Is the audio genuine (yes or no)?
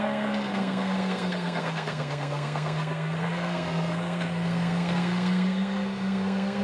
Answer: no